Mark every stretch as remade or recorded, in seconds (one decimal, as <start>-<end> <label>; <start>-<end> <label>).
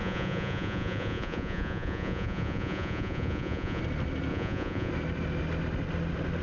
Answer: 0.0-3.8 remade; 3.8-4.3 recorded; 4.3-4.9 remade; 4.9-6.4 recorded